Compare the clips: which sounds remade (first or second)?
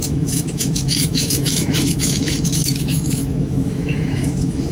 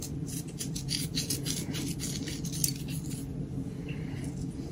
first